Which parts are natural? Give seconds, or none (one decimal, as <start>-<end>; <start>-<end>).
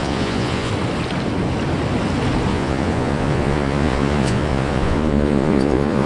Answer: 0.7-2.5